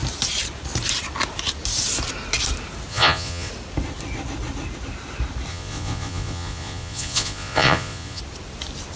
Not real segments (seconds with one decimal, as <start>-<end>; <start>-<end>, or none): 2.9-3.5; 5.5-8.2